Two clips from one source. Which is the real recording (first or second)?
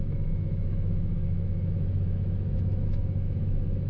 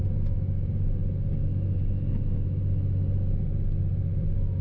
second